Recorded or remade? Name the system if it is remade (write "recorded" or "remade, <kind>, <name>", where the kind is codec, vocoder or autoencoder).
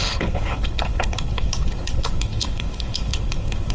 remade, codec, HILCodec